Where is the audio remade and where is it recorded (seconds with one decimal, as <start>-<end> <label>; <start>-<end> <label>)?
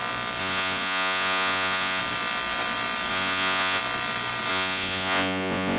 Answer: 0.0-0.4 recorded; 0.4-2.0 remade; 2.0-3.1 recorded; 3.1-3.8 remade; 3.8-4.5 recorded; 4.5-5.8 remade